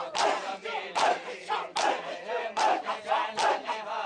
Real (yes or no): yes